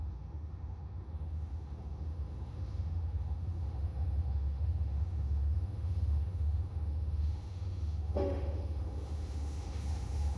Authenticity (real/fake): fake